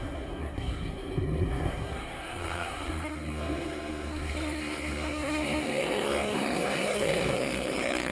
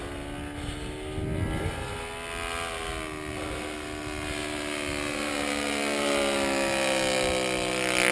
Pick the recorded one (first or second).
second